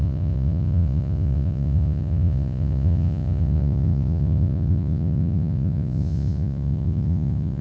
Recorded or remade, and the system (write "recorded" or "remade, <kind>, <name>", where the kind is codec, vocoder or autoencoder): remade, vocoder, Vocos